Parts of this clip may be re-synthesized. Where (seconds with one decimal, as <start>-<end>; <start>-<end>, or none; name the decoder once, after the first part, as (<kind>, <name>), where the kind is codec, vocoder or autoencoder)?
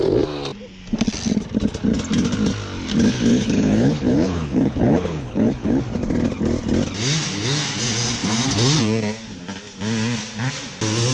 3.3-5.8 (codec, HILCodec)